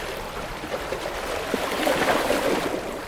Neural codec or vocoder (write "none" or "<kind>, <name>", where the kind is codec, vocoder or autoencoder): vocoder, BigVGAN v2